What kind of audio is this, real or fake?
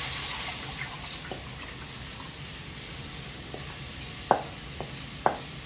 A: real